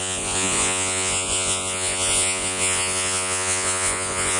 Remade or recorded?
remade